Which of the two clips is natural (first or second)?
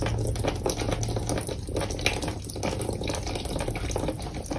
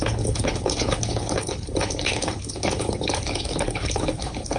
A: first